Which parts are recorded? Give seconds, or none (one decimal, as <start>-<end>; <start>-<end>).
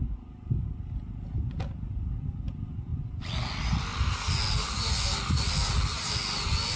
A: 0.0-6.8